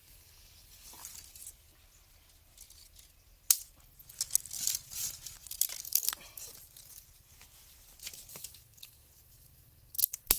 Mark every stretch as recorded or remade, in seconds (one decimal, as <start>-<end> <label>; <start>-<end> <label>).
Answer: 0.0-1.0 remade; 1.0-5.8 recorded; 5.8-6.5 remade; 6.5-8.3 recorded; 8.3-10.4 remade